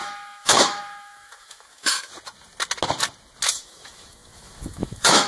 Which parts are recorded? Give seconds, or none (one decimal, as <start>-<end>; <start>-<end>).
2.1-3.5